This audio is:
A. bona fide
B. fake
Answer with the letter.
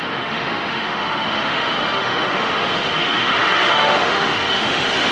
B